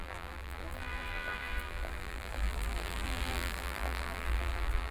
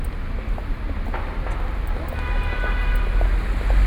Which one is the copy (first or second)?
first